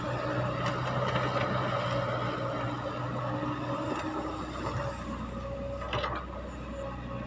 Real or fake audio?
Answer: real